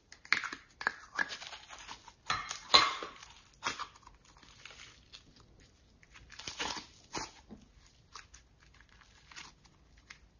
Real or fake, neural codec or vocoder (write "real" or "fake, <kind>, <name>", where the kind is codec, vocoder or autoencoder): real